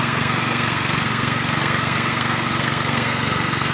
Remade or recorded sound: remade